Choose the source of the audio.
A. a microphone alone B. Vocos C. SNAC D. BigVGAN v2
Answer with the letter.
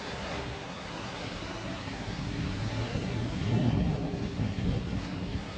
C